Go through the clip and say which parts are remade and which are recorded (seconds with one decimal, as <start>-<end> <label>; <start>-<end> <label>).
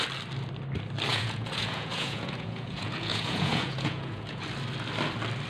0.0-1.1 recorded; 1.1-4.4 remade; 4.4-5.5 recorded